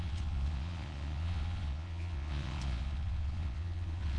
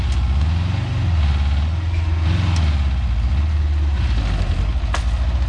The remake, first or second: first